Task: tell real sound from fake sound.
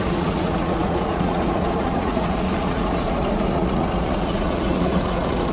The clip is fake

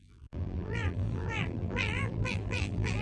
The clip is fake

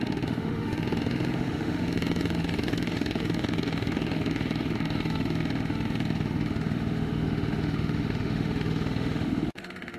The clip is fake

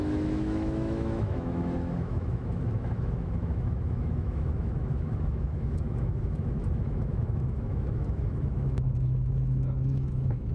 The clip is fake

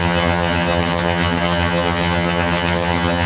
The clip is fake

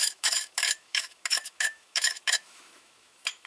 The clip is fake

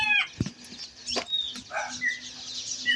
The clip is real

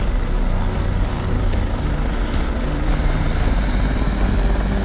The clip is real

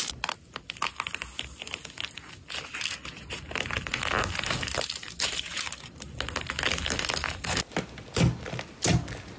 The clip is real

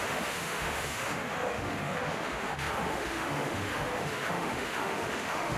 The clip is fake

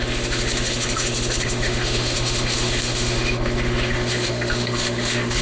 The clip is fake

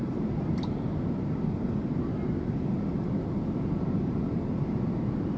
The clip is real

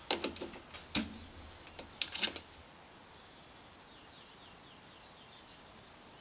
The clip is real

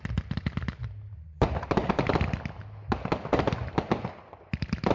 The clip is real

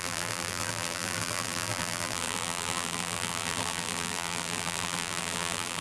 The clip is fake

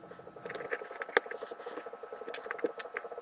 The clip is real